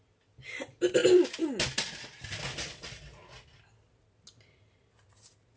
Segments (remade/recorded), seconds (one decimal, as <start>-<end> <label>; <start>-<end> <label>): 0.0-5.6 recorded